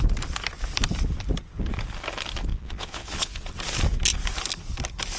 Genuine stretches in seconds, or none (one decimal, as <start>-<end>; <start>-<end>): 0.0-2.5; 3.5-5.2